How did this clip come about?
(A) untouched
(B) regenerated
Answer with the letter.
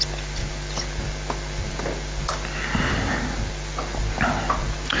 A